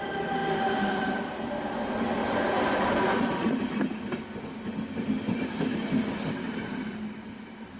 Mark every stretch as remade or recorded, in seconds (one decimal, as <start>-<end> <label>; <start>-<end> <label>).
0.0-7.8 recorded